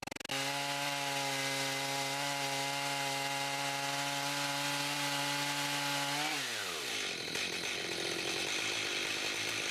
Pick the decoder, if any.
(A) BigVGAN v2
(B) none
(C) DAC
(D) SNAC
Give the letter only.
B